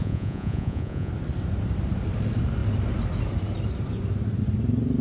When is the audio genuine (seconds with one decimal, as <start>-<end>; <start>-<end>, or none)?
1.1-5.0